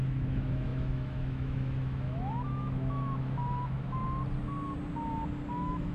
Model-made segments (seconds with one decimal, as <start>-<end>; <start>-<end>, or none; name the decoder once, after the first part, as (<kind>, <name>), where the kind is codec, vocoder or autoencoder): 0.0-4.0 (autoencoder, DAC-VAE); 5.5-5.9